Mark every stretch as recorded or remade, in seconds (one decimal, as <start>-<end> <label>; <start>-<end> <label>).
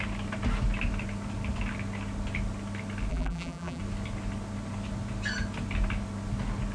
0.0-3.1 recorded; 3.1-3.8 remade; 3.8-6.7 recorded